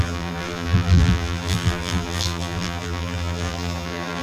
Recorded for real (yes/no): no